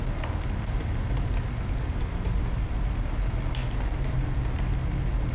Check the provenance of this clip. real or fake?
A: real